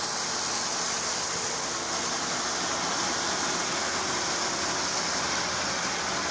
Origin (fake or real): real